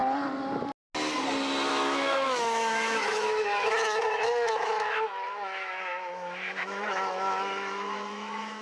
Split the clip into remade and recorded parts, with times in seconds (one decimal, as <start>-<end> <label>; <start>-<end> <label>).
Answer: 0.0-1.7 recorded; 1.7-8.6 remade